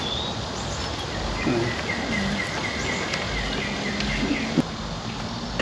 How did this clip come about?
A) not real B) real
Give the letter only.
B